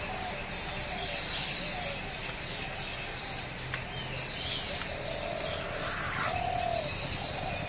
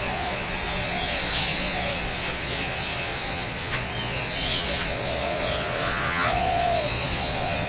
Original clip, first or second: first